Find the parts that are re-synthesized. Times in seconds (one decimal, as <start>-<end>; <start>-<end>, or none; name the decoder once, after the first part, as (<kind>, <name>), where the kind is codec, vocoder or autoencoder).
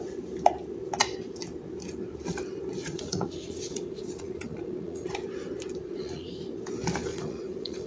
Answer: 2.8-5.1 (vocoder, Vocos); 5.8-6.3; 7.1-7.9